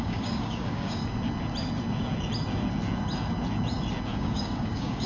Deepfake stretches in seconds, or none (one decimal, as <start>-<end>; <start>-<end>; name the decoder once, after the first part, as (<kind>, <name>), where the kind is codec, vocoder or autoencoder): 0.0-1.0 (codec, DAC); 4.1-5.1